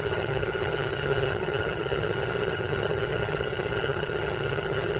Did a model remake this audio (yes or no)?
yes